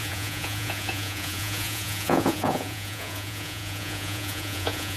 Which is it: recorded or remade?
remade